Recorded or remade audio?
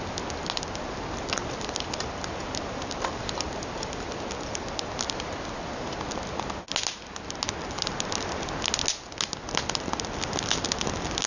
recorded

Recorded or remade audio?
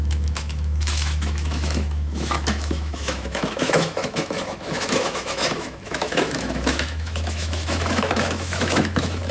remade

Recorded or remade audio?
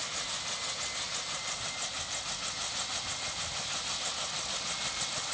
recorded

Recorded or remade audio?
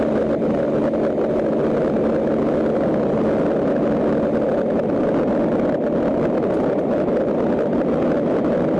recorded